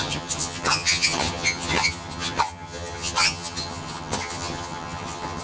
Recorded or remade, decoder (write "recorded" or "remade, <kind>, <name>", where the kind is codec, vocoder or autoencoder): remade, vocoder, HiFi-GAN